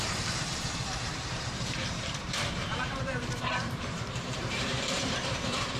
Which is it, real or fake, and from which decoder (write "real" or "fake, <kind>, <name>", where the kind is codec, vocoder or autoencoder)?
fake, vocoder, BigVGAN v2